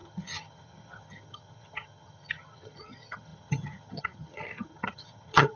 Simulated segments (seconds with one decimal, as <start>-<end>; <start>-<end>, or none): 0.0-5.6